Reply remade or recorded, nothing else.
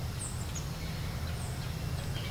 recorded